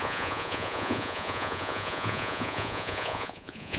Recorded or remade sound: remade